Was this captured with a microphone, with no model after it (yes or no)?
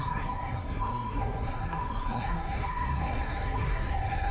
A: no